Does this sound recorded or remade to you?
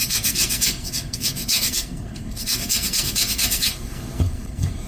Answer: remade